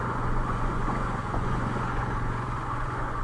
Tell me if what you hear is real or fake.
fake